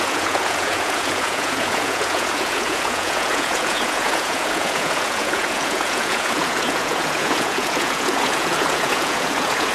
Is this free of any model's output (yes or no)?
no